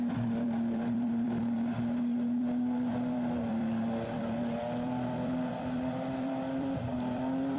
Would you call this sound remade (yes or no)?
yes